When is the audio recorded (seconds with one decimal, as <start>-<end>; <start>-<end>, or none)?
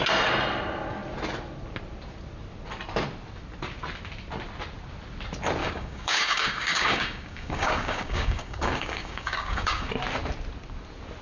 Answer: 0.0-5.6; 9.9-11.2